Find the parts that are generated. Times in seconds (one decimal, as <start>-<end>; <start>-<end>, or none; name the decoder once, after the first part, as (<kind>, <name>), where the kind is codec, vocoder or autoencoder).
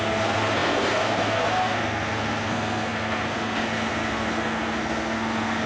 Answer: 0.0-5.7 (codec, SNAC)